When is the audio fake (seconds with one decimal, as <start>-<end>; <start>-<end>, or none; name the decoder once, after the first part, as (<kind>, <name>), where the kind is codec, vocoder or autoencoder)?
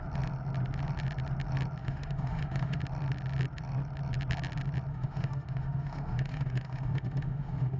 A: 1.8-2.8 (autoencoder, DAC-VAE); 4.9-7.8